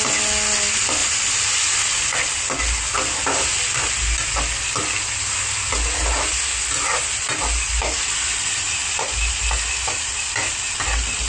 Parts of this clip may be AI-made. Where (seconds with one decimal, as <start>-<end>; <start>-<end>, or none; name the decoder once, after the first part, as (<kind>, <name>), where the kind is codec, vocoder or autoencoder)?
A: none